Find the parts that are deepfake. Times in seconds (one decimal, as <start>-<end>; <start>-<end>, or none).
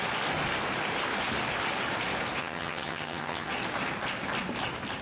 2.4-3.5